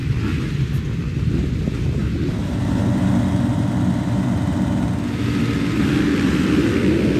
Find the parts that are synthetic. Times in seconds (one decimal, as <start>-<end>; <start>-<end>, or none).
0.0-0.5; 2.0-4.4